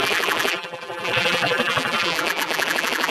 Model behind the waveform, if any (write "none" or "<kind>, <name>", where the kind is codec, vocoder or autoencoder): vocoder, BigVGAN v2